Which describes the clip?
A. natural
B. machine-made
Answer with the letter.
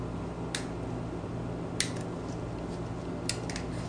A